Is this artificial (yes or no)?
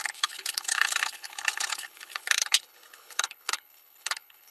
yes